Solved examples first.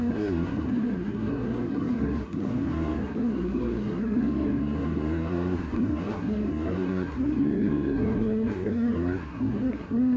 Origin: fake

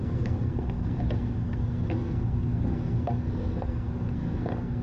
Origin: fake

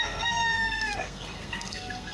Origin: fake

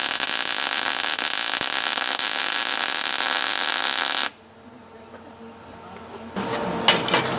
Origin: real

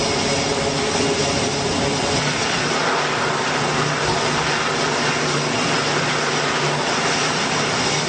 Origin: real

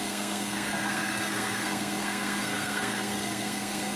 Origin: fake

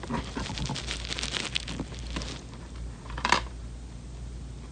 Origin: real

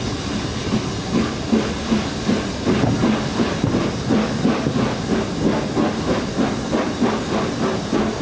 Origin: real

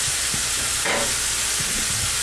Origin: real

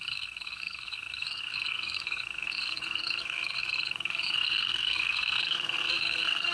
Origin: fake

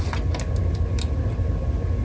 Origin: real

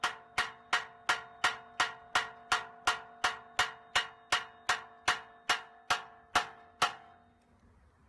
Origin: real